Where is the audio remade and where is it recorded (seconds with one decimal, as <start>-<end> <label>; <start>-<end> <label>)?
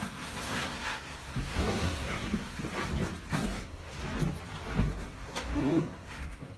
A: 0.0-2.6 remade; 2.6-3.3 recorded; 3.3-4.0 remade; 4.0-4.8 recorded; 4.8-6.6 remade